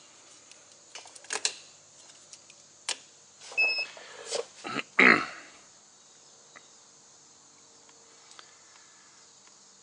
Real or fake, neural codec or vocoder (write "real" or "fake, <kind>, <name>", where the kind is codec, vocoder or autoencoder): real